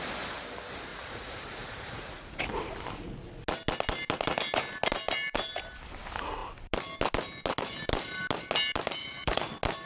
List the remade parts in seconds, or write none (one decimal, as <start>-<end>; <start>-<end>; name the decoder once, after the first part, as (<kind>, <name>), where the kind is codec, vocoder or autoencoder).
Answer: 0.9-2.7 (vocoder, Vocos); 9.0-9.5